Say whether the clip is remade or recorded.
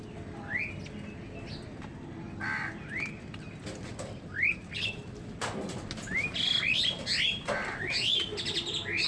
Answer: recorded